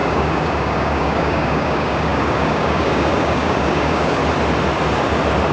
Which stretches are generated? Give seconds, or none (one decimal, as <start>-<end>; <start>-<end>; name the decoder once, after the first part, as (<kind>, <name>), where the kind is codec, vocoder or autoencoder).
0.0-4.2 (codec, DAC)